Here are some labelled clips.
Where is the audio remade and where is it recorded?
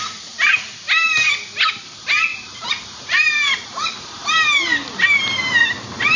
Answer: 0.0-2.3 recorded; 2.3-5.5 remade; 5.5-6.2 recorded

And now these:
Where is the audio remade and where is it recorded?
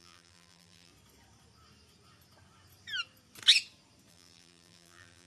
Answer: 0.0-0.9 remade; 0.9-4.1 recorded; 4.1-5.3 remade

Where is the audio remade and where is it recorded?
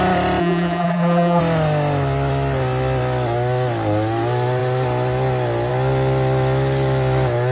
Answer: 0.0-0.4 recorded; 0.4-1.4 remade; 1.4-7.5 recorded